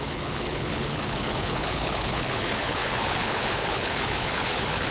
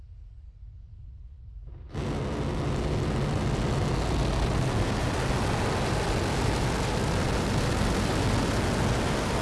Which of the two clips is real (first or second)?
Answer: second